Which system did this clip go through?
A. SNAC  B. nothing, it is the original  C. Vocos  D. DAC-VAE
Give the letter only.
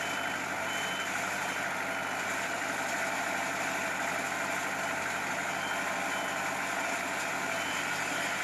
B